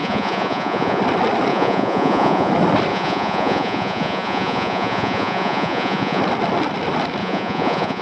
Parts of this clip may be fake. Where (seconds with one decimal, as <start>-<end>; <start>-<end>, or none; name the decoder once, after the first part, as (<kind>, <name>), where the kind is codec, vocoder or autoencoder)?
0.0-1.0 (vocoder, Vocos); 1.5-2.5; 2.9-6.2; 7.2-8.0